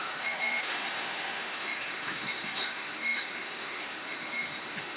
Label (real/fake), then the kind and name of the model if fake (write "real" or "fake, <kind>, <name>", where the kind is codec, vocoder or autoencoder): fake, autoencoder, DAC-VAE